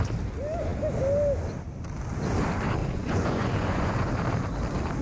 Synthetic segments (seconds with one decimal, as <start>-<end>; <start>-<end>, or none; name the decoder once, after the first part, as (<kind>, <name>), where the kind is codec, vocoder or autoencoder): 2.8-4.1 (vocoder, Vocos)

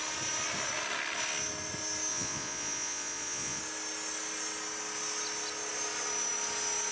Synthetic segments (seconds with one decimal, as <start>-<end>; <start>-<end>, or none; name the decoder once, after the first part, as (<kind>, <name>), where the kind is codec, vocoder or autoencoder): 2.1-3.6 (vocoder, Vocos)

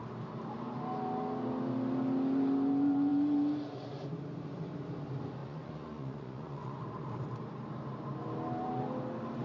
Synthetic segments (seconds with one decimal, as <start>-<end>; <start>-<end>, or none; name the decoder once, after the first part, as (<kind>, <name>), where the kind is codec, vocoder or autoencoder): 5.4-6.8 (vocoder, Vocos)

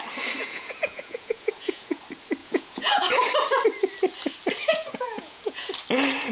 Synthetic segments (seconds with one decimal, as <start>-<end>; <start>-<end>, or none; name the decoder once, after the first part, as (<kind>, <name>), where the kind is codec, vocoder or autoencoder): 0.4-2.0 (vocoder, Vocos); 2.4-3.1; 4.6-5.7

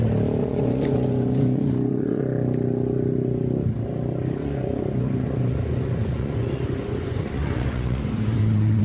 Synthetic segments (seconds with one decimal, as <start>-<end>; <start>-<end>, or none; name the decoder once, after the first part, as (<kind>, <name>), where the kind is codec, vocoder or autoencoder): 0.4-2.2 (vocoder, Vocos); 4.4-8.8

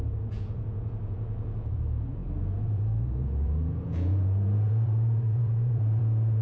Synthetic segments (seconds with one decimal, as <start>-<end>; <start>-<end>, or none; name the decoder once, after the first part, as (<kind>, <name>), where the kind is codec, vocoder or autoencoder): 0.0-6.4 (vocoder, Vocos)

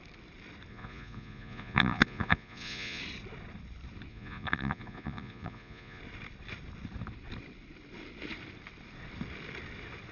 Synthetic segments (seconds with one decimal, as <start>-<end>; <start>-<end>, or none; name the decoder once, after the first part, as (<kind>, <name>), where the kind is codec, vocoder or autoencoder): 0.7-3.0 (vocoder, Vocos); 4.1-6.0